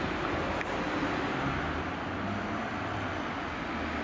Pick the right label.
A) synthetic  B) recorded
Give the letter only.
B